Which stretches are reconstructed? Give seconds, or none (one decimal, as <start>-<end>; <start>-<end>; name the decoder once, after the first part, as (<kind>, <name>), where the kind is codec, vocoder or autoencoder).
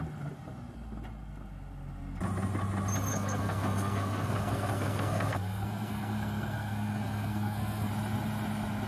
3.1-7.9 (codec, SNAC)